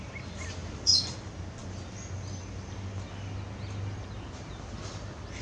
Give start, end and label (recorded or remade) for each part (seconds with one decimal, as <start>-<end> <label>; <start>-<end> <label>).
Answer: 0.0-5.4 recorded